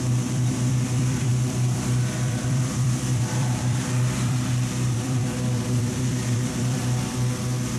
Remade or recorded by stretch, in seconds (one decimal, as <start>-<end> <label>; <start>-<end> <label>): 0.0-6.8 remade; 6.8-7.8 recorded